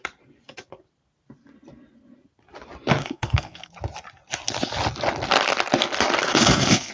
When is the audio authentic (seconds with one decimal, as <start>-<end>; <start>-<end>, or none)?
0.0-3.0; 3.7-6.3